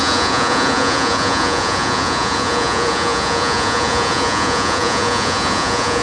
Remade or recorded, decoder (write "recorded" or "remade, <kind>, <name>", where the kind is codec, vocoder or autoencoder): remade, vocoder, Vocos